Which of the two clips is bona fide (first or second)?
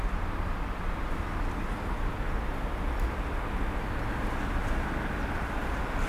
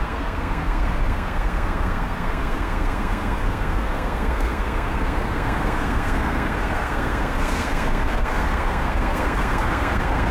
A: first